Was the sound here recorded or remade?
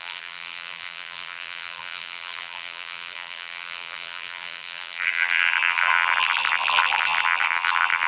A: remade